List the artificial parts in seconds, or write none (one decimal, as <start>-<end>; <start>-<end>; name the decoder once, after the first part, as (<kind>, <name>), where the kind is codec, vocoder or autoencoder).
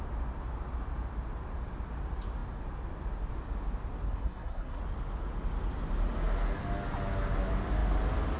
4.1-4.8 (codec, SNAC)